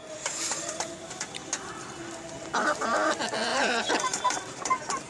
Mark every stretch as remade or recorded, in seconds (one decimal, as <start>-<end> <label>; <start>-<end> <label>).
0.0-0.6 remade; 0.6-3.5 recorded; 3.5-5.1 remade